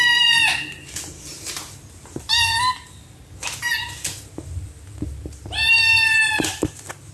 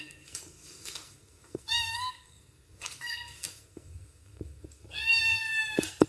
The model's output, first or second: second